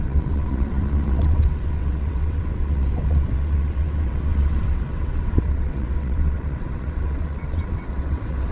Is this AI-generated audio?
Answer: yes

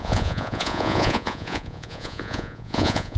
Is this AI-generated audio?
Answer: yes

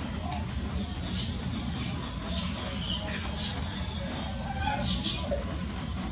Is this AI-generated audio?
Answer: no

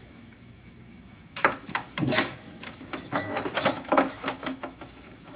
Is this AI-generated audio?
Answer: yes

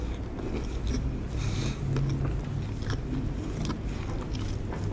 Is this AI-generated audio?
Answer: no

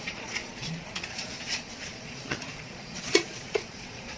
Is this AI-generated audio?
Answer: yes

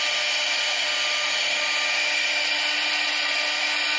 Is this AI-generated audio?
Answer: no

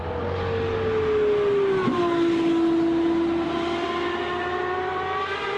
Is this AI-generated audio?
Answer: no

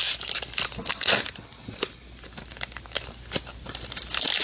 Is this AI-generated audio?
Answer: no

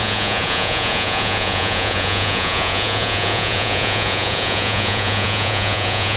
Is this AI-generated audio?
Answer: yes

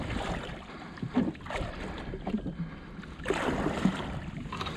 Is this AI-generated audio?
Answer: no